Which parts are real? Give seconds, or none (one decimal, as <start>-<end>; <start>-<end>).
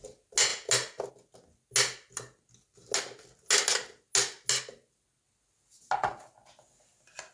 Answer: 0.0-7.3